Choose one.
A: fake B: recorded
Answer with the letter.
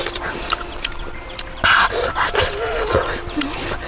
B